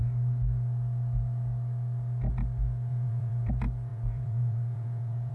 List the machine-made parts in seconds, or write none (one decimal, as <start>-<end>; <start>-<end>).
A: 2.9-3.5; 3.9-5.3